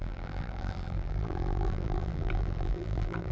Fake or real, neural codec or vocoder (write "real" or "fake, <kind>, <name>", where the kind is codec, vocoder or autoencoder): fake, vocoder, BigVGAN v2